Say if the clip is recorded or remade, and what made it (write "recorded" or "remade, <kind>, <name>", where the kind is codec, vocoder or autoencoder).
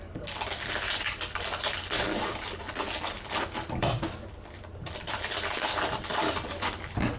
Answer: remade, vocoder, BigVGAN v2